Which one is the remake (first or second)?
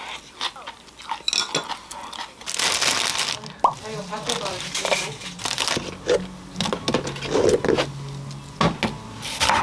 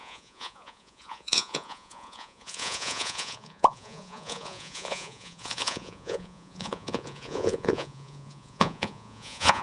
second